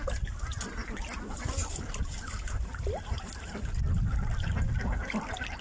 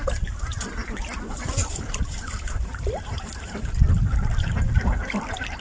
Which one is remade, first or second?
second